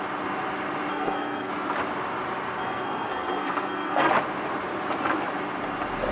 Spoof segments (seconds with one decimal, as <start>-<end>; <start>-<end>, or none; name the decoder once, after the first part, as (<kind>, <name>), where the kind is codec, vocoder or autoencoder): 0.9-1.5 (codec, SNAC); 2.6-4.1

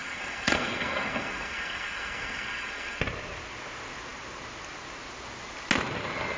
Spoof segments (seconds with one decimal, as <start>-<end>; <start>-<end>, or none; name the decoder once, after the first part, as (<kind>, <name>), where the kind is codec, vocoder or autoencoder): 0.0-3.0 (codec, SNAC)

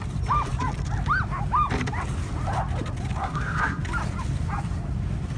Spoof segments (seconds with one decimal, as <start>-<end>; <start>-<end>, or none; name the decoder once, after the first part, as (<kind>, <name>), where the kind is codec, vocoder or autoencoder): 3.2-3.8 (codec, SNAC)